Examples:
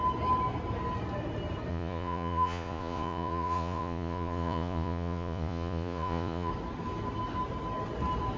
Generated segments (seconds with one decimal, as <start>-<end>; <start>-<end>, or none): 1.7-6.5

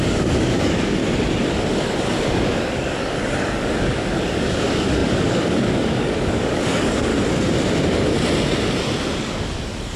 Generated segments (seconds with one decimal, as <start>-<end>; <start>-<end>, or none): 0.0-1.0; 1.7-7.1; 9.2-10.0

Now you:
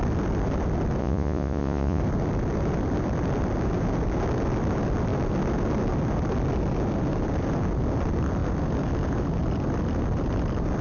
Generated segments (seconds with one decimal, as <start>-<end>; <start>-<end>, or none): 1.0-2.0